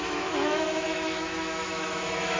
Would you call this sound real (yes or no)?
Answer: no